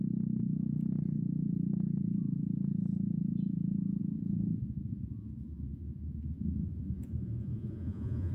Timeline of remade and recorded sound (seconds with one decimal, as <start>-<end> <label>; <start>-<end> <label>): 0.0-4.0 recorded; 4.0-8.3 remade